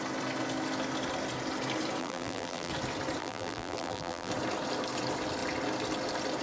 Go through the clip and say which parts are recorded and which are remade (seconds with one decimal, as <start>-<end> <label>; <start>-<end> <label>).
0.0-2.0 recorded; 2.0-2.7 remade; 2.7-3.2 recorded; 3.2-4.3 remade; 4.3-6.4 recorded